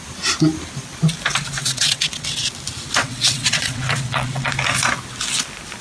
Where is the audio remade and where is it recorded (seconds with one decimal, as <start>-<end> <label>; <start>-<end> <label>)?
0.0-1.6 recorded; 1.6-2.4 remade; 2.4-3.0 recorded; 3.0-4.5 remade; 4.5-5.8 recorded